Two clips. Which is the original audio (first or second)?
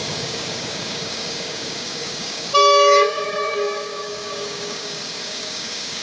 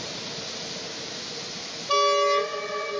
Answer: second